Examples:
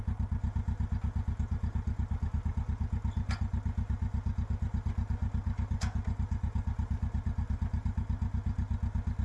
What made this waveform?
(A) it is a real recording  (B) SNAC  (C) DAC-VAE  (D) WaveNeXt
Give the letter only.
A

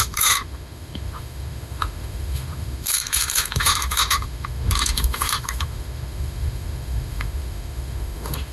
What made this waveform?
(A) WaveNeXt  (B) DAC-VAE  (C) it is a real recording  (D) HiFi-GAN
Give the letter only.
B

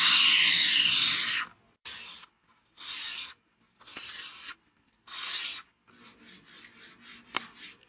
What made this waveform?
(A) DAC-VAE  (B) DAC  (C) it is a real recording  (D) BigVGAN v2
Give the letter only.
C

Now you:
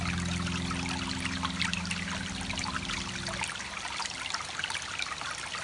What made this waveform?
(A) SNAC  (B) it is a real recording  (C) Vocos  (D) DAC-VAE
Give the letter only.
B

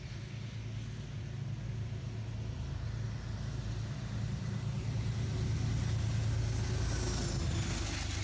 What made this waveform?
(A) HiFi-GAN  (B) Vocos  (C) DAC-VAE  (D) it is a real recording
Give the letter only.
D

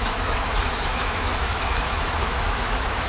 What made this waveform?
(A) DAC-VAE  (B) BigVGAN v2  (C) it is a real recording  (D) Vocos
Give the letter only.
A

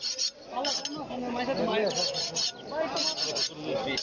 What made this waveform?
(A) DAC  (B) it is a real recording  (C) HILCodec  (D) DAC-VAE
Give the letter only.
B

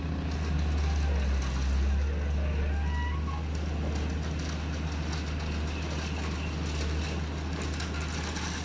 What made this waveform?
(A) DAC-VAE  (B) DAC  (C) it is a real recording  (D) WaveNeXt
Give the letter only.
C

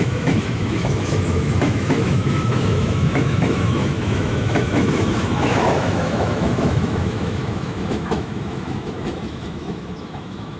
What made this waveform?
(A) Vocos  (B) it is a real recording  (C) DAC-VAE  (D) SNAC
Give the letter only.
C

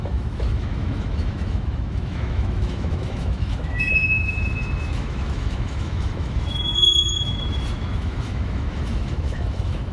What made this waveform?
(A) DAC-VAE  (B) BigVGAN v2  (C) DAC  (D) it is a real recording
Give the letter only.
A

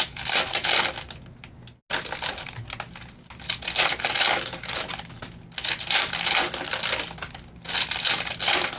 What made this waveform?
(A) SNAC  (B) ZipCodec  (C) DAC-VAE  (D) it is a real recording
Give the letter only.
D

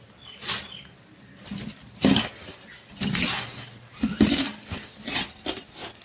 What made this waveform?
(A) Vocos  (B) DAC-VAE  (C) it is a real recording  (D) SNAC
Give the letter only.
C